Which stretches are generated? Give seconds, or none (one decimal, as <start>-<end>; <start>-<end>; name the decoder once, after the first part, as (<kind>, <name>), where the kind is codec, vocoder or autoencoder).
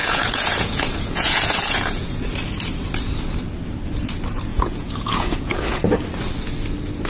0.0-2.2 (vocoder, Vocos); 4.5-5.8